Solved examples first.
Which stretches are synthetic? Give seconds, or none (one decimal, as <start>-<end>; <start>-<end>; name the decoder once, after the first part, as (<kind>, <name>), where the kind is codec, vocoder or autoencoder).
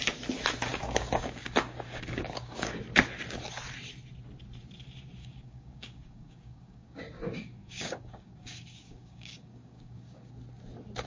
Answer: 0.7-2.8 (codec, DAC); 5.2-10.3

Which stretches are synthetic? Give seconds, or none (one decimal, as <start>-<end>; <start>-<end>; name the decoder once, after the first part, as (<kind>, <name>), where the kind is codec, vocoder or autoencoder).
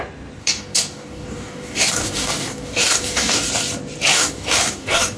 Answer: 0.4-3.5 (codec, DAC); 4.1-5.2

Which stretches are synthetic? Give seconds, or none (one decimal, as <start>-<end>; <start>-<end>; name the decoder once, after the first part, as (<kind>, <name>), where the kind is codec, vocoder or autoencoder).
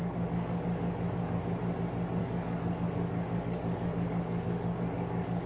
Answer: 0.0-1.4 (codec, DAC); 2.2-5.5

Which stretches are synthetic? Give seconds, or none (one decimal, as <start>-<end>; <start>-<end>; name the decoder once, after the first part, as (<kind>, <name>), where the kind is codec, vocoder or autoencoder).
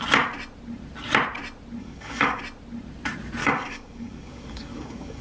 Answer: 1.8-2.4 (codec, DAC); 3.4-5.2